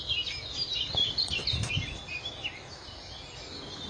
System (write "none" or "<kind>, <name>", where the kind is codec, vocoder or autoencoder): none